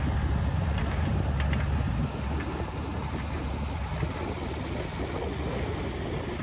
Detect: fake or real real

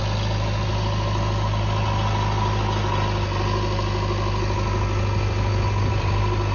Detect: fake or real real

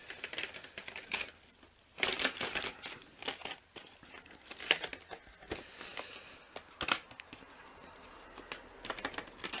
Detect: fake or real real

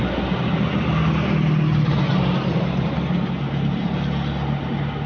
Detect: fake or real real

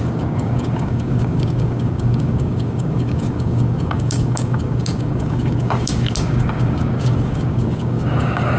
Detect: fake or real fake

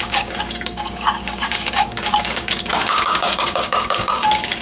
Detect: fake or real fake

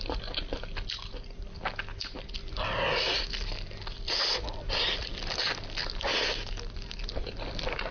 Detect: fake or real real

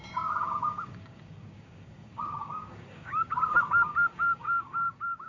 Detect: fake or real fake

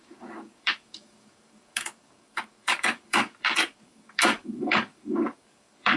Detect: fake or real fake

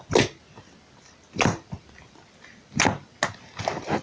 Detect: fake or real real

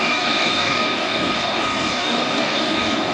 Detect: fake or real fake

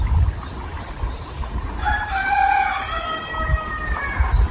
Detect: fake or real real